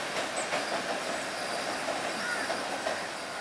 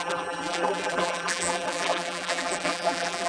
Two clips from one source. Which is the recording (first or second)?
first